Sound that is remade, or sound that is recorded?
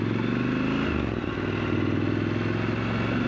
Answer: recorded